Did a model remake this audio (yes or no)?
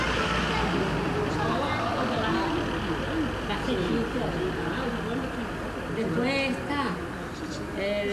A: no